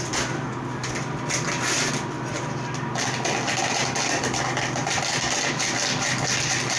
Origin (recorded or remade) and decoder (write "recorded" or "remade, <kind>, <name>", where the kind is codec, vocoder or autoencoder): recorded